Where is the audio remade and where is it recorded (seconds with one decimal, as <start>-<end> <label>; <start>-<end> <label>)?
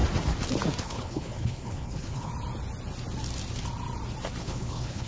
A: 0.0-0.8 recorded; 0.8-2.3 remade; 2.3-4.4 recorded; 4.4-5.1 remade